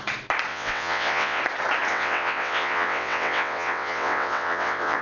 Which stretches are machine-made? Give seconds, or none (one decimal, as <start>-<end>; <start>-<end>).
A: 0.5-1.4; 1.9-5.0